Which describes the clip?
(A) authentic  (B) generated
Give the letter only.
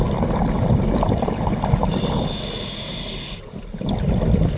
A